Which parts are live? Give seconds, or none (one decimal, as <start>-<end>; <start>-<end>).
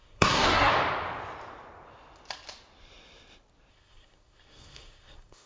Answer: 0.7-3.7